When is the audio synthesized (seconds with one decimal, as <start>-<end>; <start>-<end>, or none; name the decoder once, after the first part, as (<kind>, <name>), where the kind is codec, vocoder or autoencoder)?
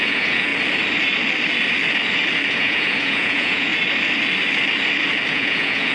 0.0-0.5 (vocoder, Vocos); 2.5-3.7; 5.3-5.9